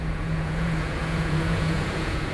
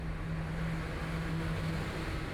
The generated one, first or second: first